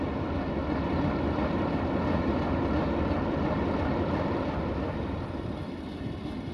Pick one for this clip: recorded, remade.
recorded